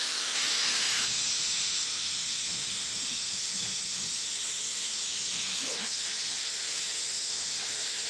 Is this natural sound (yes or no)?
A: no